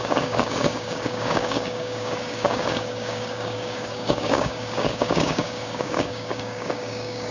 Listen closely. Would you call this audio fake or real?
fake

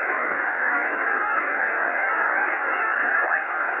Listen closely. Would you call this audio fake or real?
fake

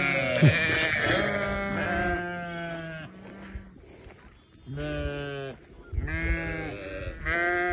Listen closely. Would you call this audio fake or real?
real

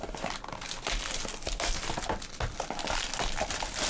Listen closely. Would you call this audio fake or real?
real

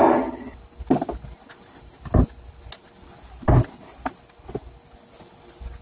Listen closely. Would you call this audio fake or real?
real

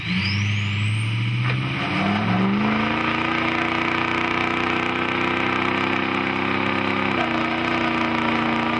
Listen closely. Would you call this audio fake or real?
real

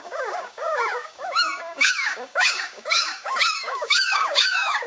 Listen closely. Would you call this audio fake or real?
fake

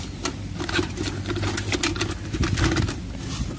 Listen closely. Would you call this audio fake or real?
real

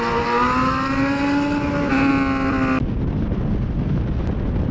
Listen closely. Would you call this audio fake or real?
real